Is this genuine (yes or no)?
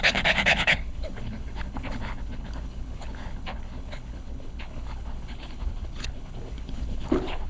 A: no